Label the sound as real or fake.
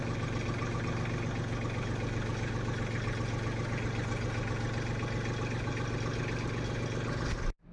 real